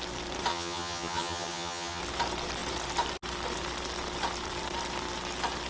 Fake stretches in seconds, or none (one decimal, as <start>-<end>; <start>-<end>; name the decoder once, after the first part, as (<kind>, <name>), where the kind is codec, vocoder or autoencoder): 0.5-2.0 (vocoder, HiFi-GAN)